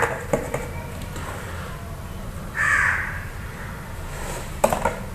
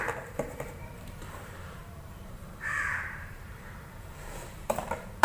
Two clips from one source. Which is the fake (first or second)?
second